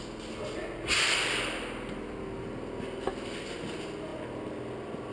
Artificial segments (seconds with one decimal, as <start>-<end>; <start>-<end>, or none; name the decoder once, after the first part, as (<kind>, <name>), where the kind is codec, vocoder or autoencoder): none